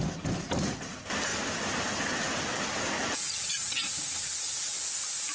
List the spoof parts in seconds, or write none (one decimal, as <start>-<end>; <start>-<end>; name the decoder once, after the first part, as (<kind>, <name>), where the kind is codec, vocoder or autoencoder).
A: none